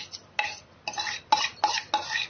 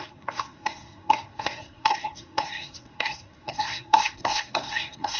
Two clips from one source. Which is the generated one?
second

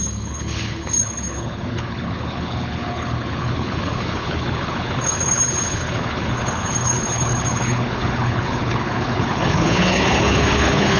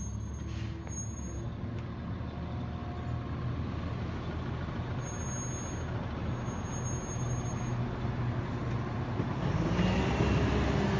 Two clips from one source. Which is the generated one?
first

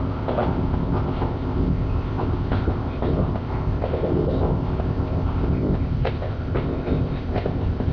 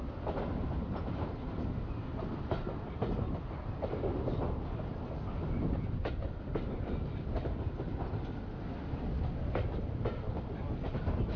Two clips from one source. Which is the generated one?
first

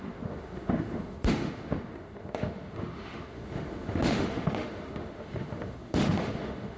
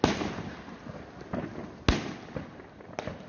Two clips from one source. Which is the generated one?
first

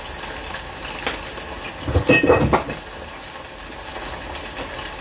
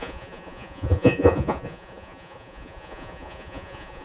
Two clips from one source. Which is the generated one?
second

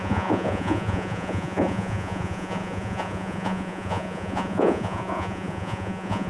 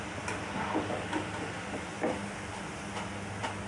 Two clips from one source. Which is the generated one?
first